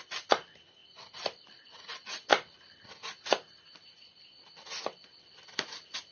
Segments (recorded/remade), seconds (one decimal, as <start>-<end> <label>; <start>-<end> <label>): 0.0-6.1 recorded